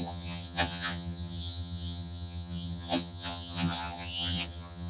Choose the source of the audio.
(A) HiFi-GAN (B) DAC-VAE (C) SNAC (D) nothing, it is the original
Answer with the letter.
A